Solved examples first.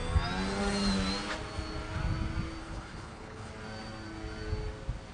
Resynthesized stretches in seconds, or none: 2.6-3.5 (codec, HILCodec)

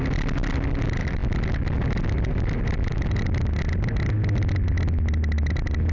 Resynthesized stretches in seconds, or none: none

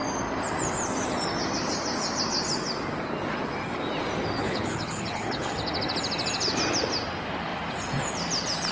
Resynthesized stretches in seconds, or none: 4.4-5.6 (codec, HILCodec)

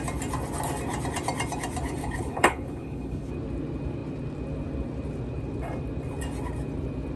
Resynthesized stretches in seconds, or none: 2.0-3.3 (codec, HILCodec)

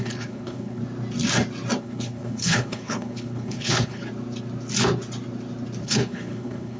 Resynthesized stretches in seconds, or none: 0.0-0.8 (codec, HILCodec); 1.8-4.0; 5.8-6.8

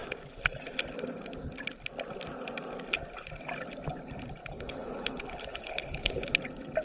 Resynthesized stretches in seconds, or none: 4.4-6.3 (codec, HILCodec)

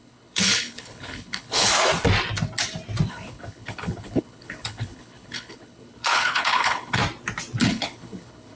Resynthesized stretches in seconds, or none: 0.0-1.7 (codec, HILCodec); 3.1-7.0; 7.7-8.6